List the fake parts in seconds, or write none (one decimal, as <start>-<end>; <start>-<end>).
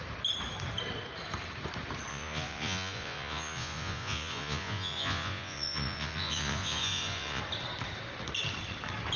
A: 2.1-7.4